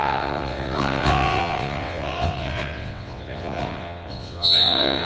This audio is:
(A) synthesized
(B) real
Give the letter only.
A